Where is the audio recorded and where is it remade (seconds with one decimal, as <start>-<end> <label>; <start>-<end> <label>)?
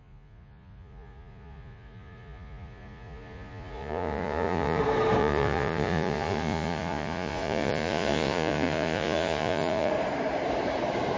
0.0-4.8 remade; 4.8-5.2 recorded; 5.2-9.9 remade; 9.9-11.2 recorded